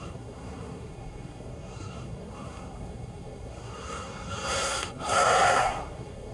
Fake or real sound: fake